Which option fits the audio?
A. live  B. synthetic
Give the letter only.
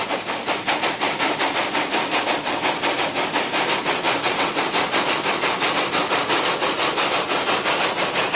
A